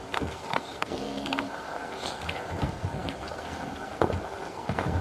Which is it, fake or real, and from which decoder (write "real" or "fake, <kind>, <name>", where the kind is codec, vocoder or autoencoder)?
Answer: fake, codec, SNAC